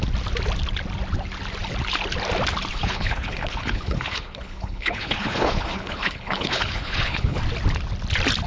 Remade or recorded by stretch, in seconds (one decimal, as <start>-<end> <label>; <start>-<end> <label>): 0.0-2.7 recorded; 2.7-7.4 remade; 7.4-8.5 recorded